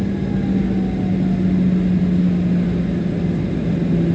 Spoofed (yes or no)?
no